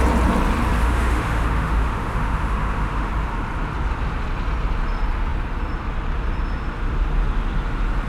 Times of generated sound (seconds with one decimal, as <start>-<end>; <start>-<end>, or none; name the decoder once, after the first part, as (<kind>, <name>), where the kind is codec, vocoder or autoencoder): 0.8-3.1 (autoencoder, DAC-VAE)